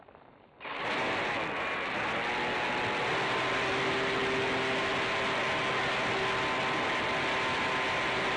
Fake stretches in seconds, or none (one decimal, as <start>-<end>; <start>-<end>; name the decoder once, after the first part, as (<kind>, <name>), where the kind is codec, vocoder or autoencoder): none